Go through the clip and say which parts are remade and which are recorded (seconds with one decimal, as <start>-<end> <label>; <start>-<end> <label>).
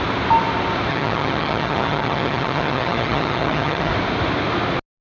0.0-0.9 recorded; 0.9-3.9 remade; 3.9-5.0 recorded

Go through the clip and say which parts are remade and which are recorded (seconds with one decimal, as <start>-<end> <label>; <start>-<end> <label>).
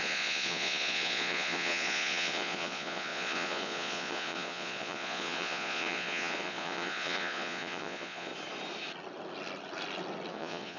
0.0-8.3 remade; 8.3-10.3 recorded; 10.3-10.8 remade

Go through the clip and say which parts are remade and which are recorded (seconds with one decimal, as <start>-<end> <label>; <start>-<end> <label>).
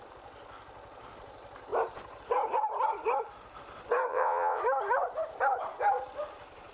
0.0-4.1 recorded; 4.1-4.6 remade; 4.6-6.7 recorded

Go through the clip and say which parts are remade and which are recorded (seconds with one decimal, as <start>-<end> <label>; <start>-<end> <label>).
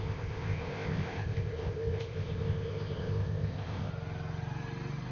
0.0-3.9 remade; 3.9-5.1 recorded